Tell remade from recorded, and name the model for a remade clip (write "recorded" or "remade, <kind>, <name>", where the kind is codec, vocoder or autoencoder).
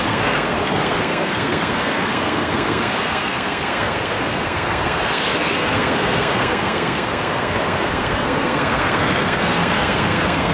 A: remade, codec, SNAC